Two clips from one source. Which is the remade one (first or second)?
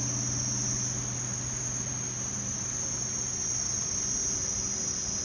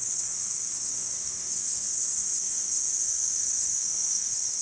second